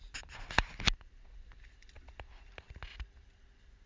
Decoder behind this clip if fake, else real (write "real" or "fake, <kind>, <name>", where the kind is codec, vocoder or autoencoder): real